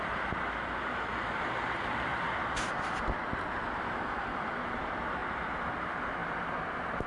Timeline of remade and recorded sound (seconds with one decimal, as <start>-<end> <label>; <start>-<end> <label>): 0.0-5.2 remade; 5.2-5.8 recorded; 5.8-7.1 remade